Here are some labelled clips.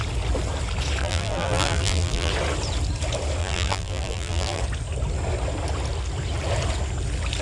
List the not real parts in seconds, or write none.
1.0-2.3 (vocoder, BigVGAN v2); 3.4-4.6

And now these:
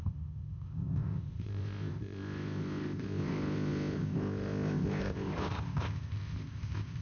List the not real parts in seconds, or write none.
0.0-7.0 (codec, ZipCodec)

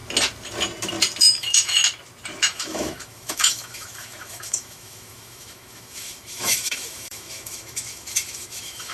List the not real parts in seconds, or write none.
1.2-1.8 (autoencoder, DAC-VAE); 2.4-8.9

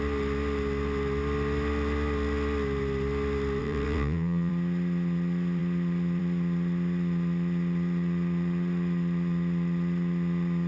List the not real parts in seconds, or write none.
3.6-4.5 (vocoder, WaveNeXt)

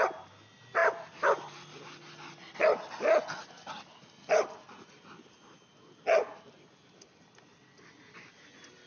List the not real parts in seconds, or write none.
none

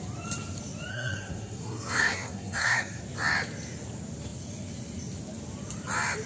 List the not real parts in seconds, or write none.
0.9-3.0 (codec, SNAC)

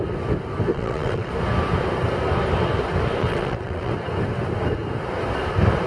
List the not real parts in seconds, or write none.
0.7-1.3 (vocoder, WaveNeXt); 3.2-3.9

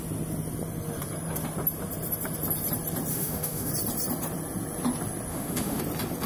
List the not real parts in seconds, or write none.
3.1-3.7 (autoencoder, DAC-VAE); 5.3-5.8